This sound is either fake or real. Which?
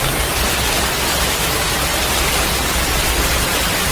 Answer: real